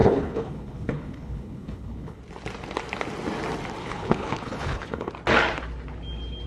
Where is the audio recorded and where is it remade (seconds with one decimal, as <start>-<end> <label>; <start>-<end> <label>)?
0.0-2.2 remade; 2.2-3.8 recorded; 3.8-5.1 remade; 5.1-6.5 recorded